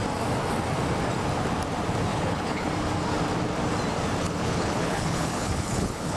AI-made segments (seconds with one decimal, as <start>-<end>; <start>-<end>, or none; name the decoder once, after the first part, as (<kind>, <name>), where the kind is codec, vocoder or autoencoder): 2.1-2.7 (codec, HILCodec); 4.2-6.2